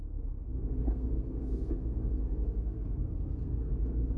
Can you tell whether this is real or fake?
fake